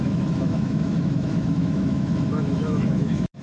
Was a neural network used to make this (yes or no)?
yes